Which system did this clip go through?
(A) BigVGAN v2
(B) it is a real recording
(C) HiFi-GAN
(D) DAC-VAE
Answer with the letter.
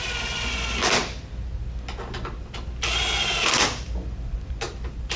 B